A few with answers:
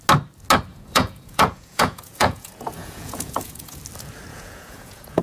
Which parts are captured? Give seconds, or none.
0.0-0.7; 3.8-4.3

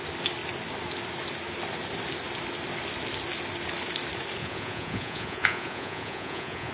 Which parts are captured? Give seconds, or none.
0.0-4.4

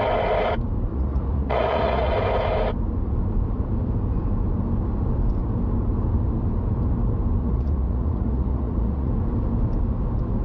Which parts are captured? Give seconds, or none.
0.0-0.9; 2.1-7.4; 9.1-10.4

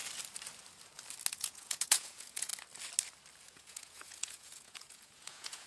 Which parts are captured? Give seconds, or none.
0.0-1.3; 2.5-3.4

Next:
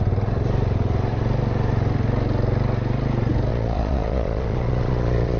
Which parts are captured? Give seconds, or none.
0.0-3.5

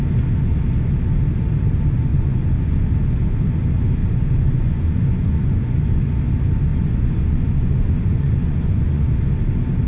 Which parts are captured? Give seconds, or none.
0.0-2.1; 2.8-4.0; 6.2-6.7; 9.0-9.9

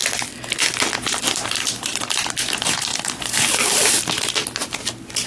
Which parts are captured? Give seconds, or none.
0.0-5.3

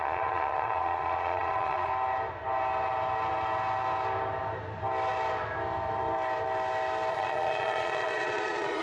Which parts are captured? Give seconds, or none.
1.9-7.1